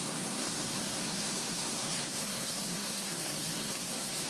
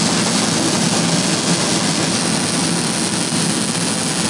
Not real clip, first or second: first